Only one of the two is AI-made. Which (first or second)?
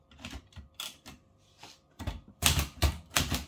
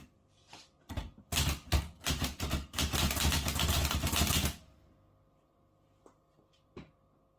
first